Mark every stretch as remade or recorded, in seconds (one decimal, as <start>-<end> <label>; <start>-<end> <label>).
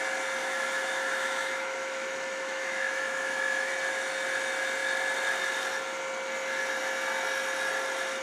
0.0-0.4 recorded; 0.4-3.7 remade; 3.7-8.2 recorded